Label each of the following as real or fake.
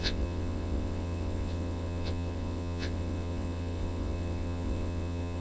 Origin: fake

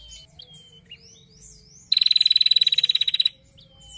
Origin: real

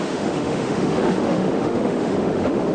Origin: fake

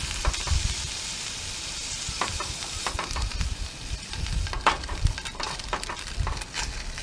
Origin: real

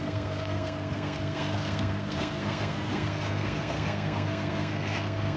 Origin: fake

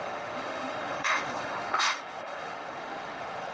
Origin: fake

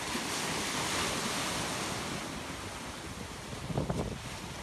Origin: real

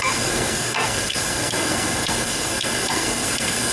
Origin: fake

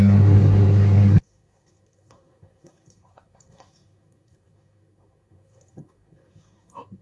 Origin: fake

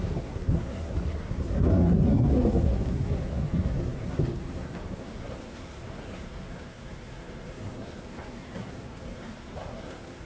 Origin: fake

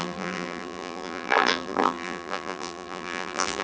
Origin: fake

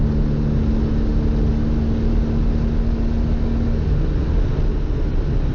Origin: real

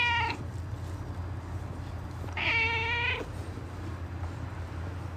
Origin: real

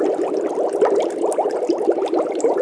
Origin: real